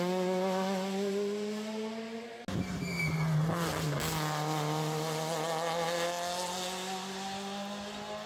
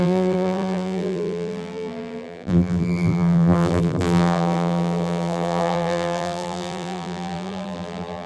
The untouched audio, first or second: first